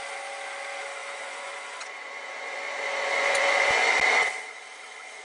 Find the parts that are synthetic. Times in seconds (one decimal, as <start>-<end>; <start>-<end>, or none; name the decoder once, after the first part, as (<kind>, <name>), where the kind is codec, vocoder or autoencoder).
1.0-4.0 (vocoder, Vocos)

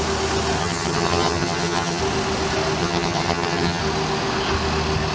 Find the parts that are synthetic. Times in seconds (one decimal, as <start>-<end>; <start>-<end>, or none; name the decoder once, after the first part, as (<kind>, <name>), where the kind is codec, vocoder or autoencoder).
0.6-2.0 (vocoder, HiFi-GAN); 2.8-3.8

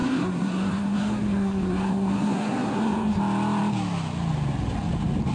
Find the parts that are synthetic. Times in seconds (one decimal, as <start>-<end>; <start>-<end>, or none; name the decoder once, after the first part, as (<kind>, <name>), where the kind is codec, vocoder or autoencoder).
0.0-3.2 (codec, SNAC)

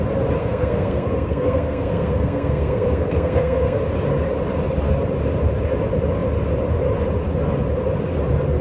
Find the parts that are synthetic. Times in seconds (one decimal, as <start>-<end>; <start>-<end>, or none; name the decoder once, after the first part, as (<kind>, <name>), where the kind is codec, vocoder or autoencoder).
0.4-3.8 (codec, SNAC)

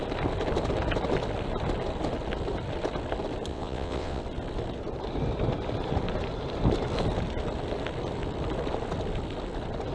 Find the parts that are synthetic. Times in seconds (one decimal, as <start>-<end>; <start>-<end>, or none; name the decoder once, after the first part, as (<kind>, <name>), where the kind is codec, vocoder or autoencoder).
3.5-4.2 (vocoder, WaveNeXt)